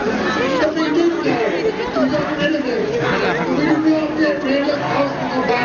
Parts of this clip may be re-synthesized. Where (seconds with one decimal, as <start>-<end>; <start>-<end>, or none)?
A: none